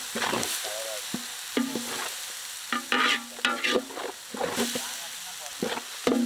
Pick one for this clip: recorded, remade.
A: recorded